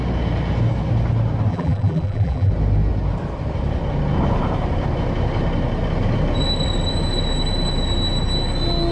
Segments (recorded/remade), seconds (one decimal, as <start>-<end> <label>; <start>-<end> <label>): 0.0-1.5 recorded; 1.5-2.5 remade; 2.5-8.9 recorded